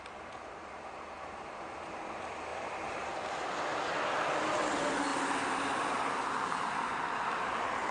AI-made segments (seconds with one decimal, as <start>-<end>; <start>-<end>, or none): 2.5-3.0; 5.1-5.9